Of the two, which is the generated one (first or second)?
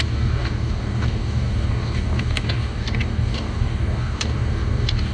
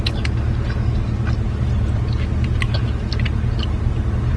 first